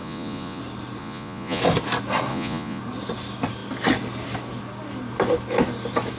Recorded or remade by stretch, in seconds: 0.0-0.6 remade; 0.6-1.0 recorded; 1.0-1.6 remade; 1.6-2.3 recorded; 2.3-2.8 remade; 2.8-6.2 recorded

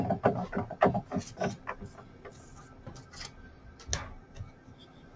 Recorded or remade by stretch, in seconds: 0.0-5.2 recorded